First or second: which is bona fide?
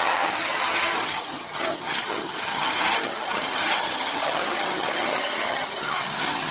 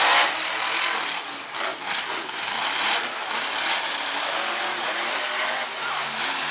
second